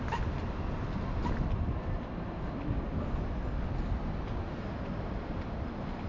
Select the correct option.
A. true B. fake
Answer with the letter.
A